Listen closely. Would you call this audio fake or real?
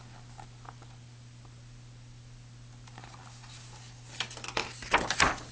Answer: real